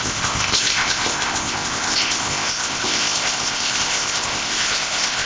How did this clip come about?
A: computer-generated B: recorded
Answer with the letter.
A